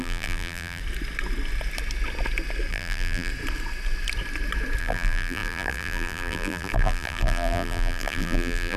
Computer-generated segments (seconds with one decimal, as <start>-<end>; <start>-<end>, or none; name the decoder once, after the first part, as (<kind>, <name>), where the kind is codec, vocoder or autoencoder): 0.0-0.8 (vocoder, BigVGAN v2); 2.7-3.3; 4.8-8.8